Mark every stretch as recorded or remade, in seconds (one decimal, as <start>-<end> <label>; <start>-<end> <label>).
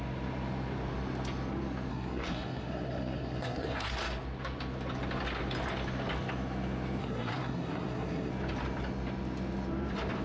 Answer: 0.0-1.9 recorded; 1.9-3.9 remade; 3.9-7.0 recorded; 7.0-8.3 remade; 8.3-10.2 recorded